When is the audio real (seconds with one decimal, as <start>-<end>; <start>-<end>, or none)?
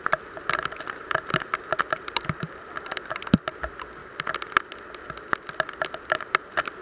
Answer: 4.0-5.7